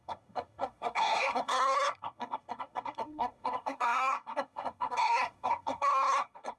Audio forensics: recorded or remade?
remade